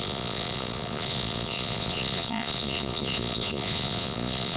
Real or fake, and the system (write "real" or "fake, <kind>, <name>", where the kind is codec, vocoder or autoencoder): fake, vocoder, Vocos